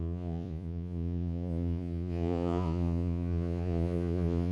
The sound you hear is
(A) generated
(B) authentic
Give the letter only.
A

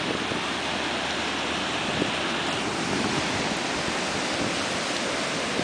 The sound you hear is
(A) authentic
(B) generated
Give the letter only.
A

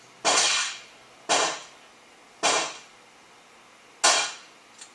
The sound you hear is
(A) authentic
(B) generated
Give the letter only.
A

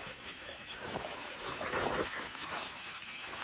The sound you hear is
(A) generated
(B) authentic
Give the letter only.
A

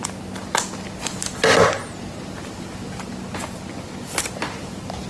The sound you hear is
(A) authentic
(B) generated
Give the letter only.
A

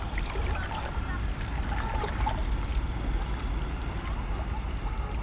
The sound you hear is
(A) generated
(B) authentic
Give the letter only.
B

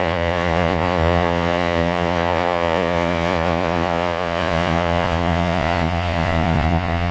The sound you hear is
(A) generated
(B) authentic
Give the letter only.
A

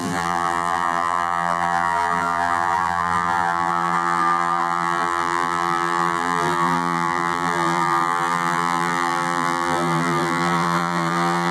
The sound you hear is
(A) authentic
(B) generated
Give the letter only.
B